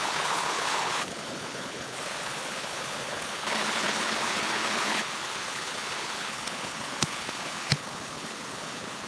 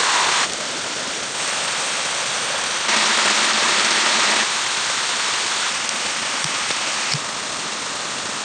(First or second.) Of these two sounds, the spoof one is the first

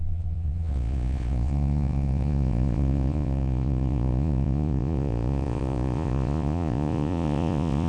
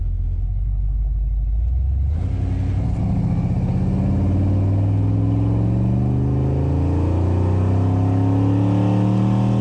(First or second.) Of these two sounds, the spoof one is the first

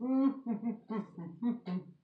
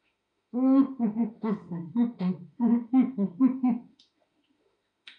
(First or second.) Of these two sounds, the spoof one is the second